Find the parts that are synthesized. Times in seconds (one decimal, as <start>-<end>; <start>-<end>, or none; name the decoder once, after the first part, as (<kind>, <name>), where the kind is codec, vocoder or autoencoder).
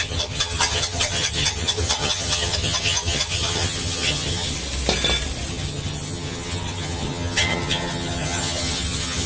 0.0-4.6 (vocoder, HiFi-GAN); 5.5-9.3